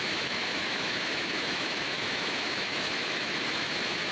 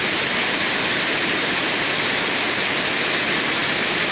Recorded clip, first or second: second